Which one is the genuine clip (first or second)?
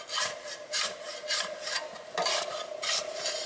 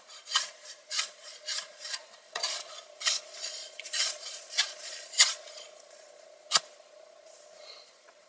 first